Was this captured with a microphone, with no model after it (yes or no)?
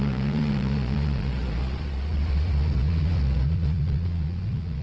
no